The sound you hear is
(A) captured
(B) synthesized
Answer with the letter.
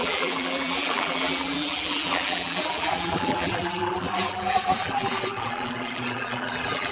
B